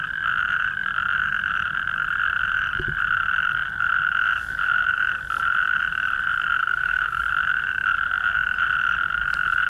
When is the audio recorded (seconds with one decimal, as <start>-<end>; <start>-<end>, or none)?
0.0-6.6; 7.2-9.7